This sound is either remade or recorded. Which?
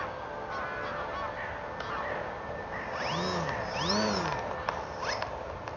recorded